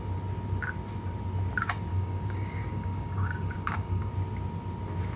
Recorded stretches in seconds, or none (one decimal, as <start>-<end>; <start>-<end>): 0.0-1.9; 4.1-5.2